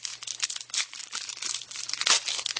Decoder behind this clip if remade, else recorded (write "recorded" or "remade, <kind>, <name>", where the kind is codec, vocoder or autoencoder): recorded